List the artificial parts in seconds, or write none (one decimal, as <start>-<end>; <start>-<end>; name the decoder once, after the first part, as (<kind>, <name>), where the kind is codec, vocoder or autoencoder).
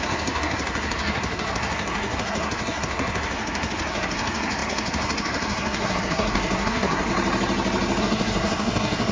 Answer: 0.0-7.1 (codec, SNAC); 8.0-9.1